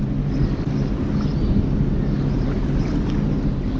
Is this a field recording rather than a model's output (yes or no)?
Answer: yes